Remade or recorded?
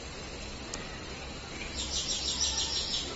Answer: recorded